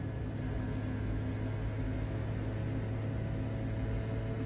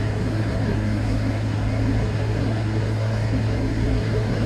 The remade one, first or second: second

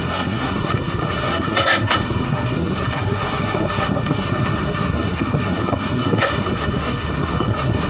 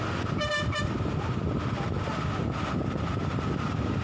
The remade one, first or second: first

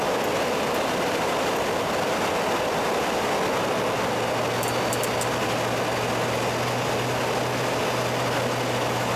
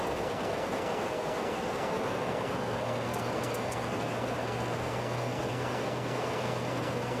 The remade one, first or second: second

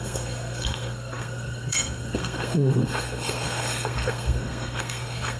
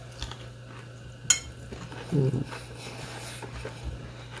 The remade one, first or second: first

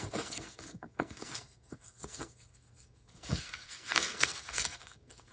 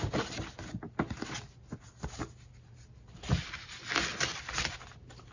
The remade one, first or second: first